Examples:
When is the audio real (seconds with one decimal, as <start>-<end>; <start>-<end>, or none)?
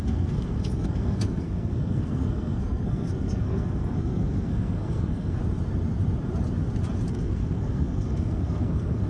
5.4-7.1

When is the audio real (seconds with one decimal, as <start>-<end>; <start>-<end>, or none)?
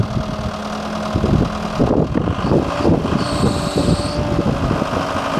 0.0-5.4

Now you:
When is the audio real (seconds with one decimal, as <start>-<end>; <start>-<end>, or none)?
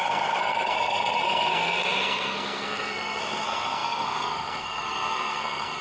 none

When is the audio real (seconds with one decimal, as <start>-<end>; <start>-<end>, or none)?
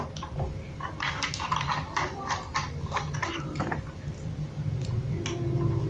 0.0-1.7; 5.2-5.9